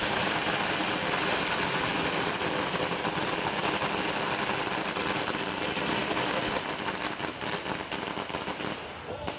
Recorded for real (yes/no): yes